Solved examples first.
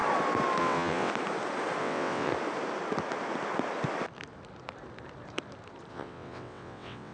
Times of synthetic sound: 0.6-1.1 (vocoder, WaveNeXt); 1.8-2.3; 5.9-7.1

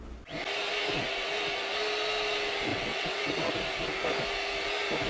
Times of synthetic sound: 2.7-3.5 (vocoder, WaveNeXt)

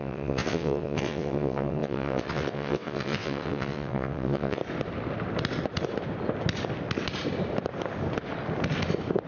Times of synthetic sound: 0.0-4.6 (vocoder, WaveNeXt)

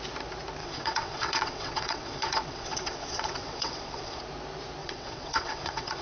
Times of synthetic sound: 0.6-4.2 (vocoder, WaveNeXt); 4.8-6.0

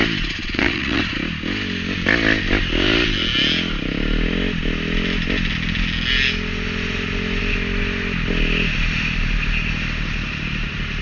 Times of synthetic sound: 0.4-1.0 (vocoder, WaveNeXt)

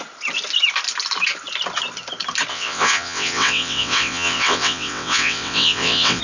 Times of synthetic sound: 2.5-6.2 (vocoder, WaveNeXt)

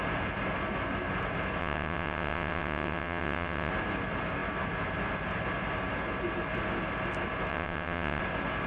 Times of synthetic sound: 1.6-3.7 (vocoder, WaveNeXt); 7.5-8.2

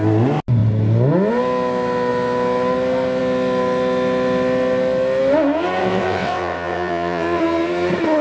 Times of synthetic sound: 5.8-7.4 (vocoder, WaveNeXt)